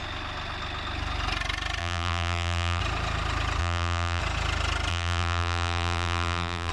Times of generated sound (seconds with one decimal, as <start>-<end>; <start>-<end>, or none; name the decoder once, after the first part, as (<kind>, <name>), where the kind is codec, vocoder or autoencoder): 1.8-2.8 (vocoder, BigVGAN v2); 3.6-4.2; 4.9-6.7